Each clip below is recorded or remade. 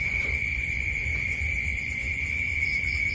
remade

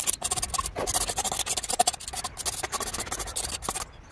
recorded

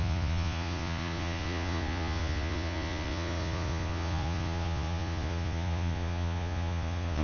remade